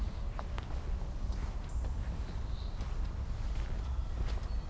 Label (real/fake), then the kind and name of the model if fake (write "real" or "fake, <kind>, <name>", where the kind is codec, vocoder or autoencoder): real